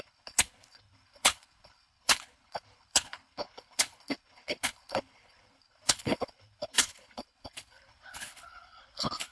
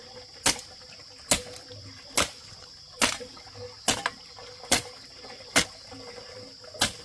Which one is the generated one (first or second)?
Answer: first